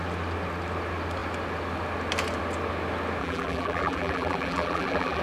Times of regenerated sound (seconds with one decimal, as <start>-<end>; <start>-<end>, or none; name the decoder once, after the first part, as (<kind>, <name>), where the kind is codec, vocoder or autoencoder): 3.2-5.2 (vocoder, BigVGAN v2)